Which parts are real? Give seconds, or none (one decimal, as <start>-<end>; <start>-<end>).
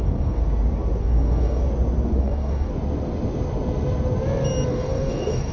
0.4-1.0; 1.6-2.2; 2.7-4.7